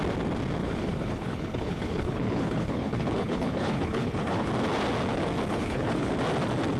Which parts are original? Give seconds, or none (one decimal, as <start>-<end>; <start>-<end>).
0.0-0.6; 4.5-5.5; 6.1-6.8